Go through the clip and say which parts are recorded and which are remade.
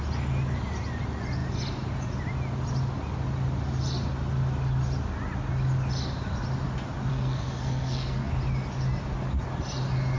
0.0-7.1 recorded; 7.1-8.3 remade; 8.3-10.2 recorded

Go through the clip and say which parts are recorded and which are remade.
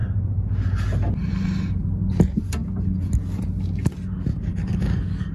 0.0-4.5 recorded; 4.5-5.3 remade